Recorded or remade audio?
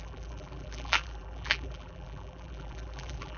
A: remade